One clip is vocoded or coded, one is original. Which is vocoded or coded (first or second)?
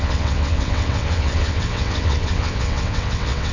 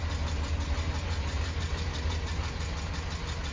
first